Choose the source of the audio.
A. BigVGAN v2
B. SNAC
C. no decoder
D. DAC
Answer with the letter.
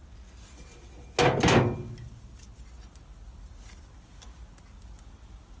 C